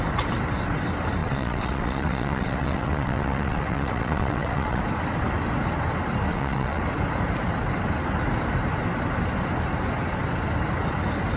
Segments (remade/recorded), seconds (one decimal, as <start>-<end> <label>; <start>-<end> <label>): 0.0-1.2 recorded; 1.2-4.8 remade; 4.8-6.3 recorded; 6.3-6.8 remade; 6.8-11.4 recorded